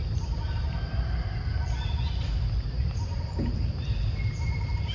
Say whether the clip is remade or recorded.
recorded